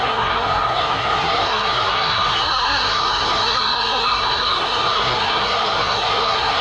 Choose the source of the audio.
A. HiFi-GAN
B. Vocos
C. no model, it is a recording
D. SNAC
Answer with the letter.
D